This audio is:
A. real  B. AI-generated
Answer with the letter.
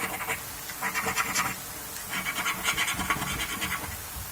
A